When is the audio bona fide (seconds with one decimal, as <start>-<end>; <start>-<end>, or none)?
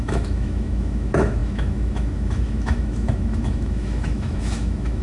none